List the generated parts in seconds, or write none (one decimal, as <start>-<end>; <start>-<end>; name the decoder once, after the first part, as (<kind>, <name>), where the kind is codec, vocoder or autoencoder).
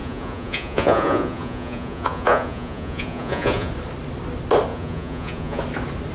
0.0-3.7 (vocoder, Vocos); 4.7-5.6